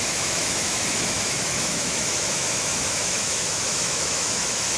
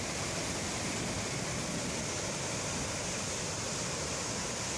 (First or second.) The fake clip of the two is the first